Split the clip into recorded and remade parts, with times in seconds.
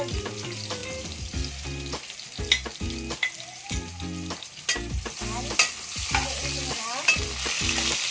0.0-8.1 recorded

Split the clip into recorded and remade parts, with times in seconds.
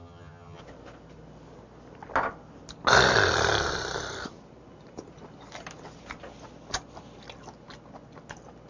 0.0-0.6 remade; 0.6-8.7 recorded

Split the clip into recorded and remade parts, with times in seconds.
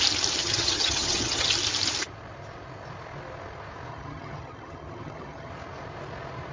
0.0-0.4 recorded; 0.4-1.5 remade; 1.5-3.9 recorded; 3.9-5.5 remade; 5.5-6.5 recorded